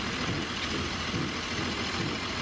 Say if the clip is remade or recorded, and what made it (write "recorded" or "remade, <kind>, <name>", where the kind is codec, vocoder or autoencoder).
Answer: recorded